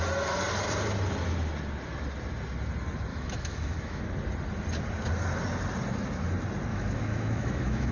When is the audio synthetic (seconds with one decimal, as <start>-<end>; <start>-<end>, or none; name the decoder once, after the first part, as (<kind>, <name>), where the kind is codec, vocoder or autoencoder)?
3.1-4.0 (autoencoder, DAC-VAE); 6.7-7.9